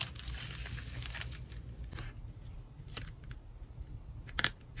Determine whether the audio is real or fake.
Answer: real